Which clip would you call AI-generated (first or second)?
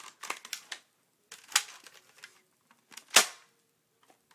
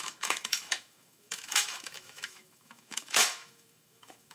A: second